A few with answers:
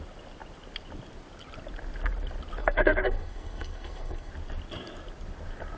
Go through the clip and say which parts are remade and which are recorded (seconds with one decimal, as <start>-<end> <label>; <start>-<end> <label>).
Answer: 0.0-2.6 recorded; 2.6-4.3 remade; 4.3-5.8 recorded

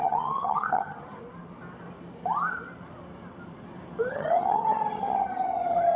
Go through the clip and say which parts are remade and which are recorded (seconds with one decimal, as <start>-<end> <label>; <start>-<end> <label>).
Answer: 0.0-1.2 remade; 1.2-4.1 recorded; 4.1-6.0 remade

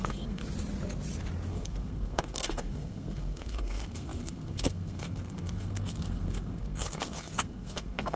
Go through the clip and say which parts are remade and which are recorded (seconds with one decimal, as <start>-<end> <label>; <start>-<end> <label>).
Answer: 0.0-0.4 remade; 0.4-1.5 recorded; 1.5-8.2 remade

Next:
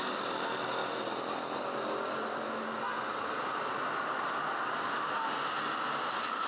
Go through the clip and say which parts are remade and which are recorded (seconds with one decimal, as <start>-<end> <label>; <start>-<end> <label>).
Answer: 0.0-6.5 recorded